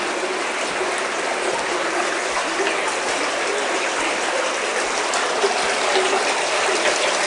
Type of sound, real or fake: real